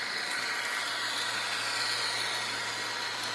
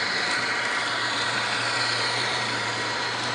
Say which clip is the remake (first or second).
second